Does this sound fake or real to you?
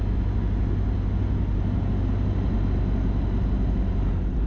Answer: real